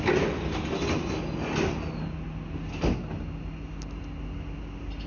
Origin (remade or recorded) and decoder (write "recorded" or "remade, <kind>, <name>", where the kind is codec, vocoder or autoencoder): recorded